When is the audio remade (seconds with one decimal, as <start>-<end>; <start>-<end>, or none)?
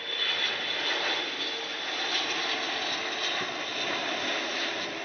none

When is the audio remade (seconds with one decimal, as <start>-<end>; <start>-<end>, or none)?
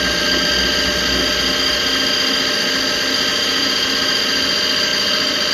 3.3-3.9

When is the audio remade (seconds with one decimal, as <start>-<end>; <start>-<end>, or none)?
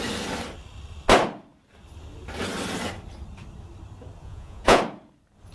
4.2-4.8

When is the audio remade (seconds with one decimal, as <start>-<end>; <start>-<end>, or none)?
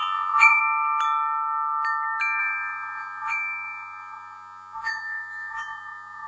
0.0-0.6; 2.4-6.3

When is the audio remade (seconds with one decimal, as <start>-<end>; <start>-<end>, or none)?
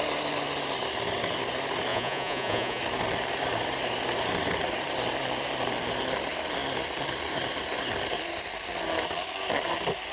1.9-2.8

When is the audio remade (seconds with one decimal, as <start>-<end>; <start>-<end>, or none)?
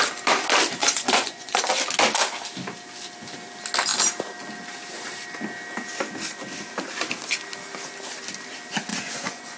0.8-1.6; 8.9-9.6